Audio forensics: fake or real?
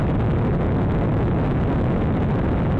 real